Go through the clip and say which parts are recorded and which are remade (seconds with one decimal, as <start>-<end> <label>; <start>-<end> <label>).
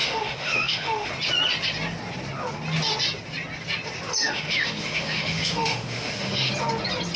0.0-1.1 remade; 1.1-4.2 recorded; 4.2-6.5 remade; 6.5-7.2 recorded